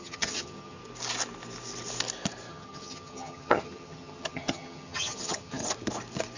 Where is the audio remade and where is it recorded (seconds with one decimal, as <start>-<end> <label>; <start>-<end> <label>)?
0.0-0.8 remade; 0.8-2.5 recorded; 2.5-5.6 remade; 5.6-6.4 recorded